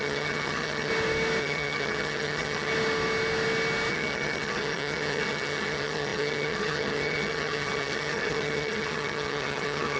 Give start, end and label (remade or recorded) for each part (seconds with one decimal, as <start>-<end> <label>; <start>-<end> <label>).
0.0-0.9 remade; 0.9-1.4 recorded; 1.4-2.7 remade; 2.7-3.9 recorded; 3.9-10.0 remade